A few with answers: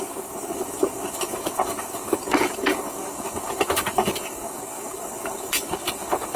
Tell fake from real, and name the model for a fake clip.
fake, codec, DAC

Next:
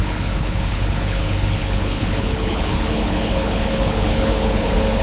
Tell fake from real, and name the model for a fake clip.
fake, codec, HILCodec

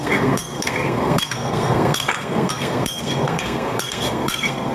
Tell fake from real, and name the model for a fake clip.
fake, codec, SNAC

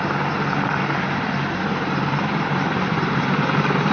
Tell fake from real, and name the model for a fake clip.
real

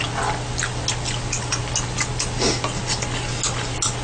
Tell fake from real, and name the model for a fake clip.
real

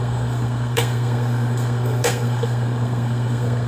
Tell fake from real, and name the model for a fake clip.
fake, codec, SNAC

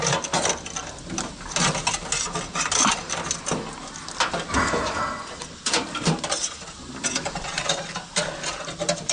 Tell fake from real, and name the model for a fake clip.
real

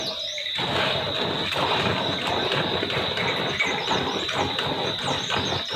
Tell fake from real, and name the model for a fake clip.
real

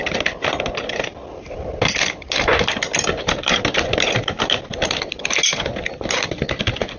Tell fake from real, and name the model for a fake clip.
real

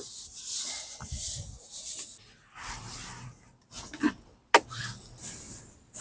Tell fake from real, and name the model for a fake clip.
real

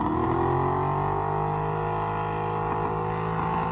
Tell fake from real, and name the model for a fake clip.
real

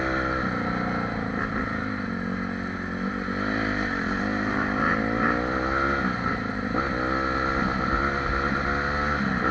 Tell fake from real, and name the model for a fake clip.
real